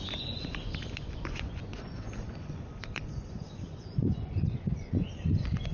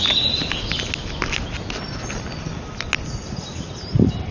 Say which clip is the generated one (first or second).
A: first